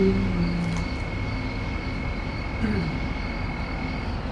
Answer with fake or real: real